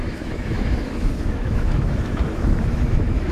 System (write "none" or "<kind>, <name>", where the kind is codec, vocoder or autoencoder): autoencoder, DAC-VAE